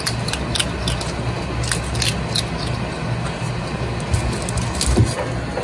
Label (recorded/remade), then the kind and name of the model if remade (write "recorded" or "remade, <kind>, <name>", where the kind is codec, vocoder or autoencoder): recorded